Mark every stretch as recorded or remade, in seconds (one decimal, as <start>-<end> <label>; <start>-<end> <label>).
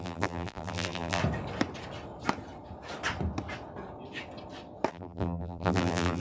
0.0-1.2 remade; 1.2-4.9 recorded; 4.9-6.2 remade